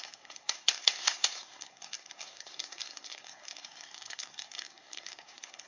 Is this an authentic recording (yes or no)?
no